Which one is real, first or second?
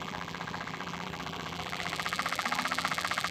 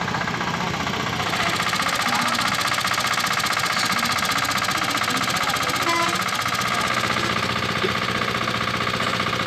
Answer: second